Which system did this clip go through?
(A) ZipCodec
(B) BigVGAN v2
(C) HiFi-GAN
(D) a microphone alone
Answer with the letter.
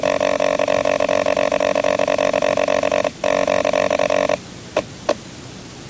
D